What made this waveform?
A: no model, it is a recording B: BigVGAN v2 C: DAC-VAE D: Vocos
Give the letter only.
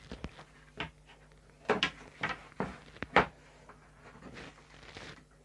A